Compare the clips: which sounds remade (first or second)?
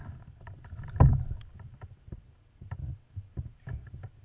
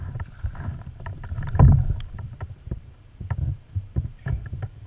second